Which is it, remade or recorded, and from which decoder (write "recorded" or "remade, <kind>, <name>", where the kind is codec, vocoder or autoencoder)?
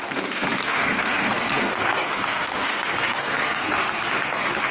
remade, codec, SNAC